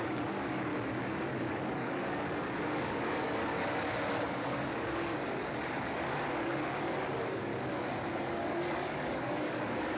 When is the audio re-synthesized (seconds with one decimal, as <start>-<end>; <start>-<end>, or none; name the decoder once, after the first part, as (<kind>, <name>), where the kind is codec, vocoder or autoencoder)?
0.0-0.7 (codec, DAC); 1.5-7.5; 8.2-10.0